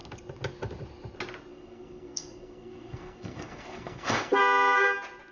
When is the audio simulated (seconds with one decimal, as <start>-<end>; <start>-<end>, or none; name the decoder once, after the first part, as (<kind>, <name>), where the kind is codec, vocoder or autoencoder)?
1.5-4.4 (codec, SNAC)